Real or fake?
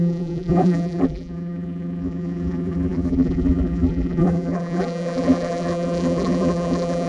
fake